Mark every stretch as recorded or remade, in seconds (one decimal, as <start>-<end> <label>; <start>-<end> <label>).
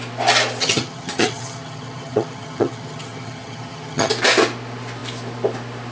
0.0-0.6 recorded; 0.6-4.1 remade; 4.1-5.9 recorded